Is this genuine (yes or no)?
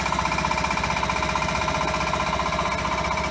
yes